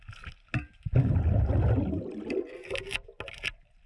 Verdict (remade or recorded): recorded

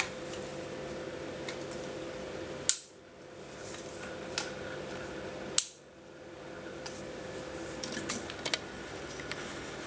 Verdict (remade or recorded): recorded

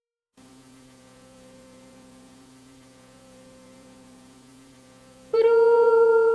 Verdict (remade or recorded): remade